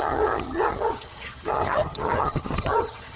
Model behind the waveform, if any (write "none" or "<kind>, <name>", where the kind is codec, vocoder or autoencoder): vocoder, HiFi-GAN